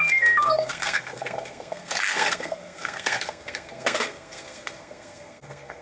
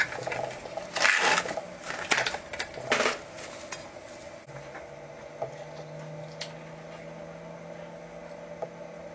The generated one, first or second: first